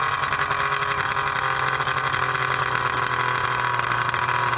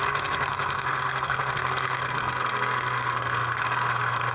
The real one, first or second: first